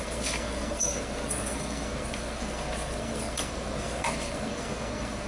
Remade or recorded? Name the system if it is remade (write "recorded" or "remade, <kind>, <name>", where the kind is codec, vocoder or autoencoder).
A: remade, codec, SNAC